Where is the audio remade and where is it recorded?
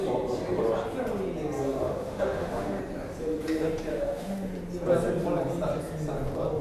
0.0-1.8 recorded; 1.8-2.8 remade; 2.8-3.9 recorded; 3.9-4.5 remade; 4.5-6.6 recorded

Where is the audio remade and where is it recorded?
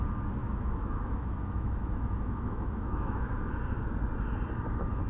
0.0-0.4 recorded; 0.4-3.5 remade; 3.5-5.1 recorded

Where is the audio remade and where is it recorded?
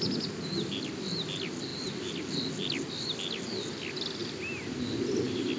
0.0-5.6 recorded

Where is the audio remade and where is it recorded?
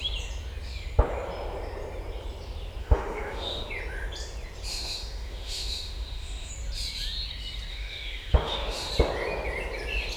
0.0-2.8 recorded; 2.8-3.7 remade; 3.7-4.7 recorded; 4.7-6.5 remade; 6.5-7.7 recorded; 7.7-8.9 remade; 8.9-10.2 recorded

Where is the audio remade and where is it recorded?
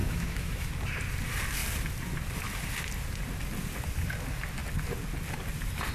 0.0-0.7 remade; 0.7-5.9 recorded